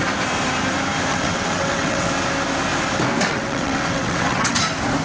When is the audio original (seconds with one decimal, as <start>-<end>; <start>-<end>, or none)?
0.0-1.1; 2.1-3.3; 4.6-5.0